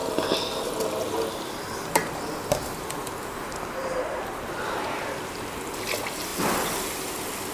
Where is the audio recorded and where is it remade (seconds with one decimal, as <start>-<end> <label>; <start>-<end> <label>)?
0.0-7.5 recorded